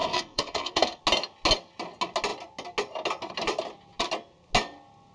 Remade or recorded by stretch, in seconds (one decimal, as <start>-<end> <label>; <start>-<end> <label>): 0.0-1.0 remade; 1.0-5.1 recorded